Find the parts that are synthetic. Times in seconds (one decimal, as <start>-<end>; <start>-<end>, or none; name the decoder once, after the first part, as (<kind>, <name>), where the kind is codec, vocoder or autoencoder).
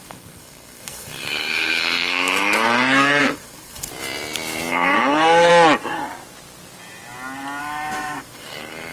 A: 0.0-3.9 (codec, SNAC); 4.7-5.5; 7.6-8.9